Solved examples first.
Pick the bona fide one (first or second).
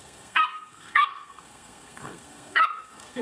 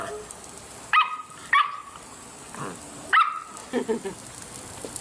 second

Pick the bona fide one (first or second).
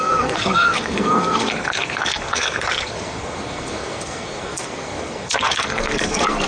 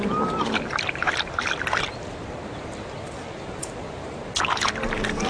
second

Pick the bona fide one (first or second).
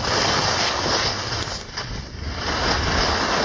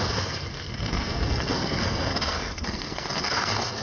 first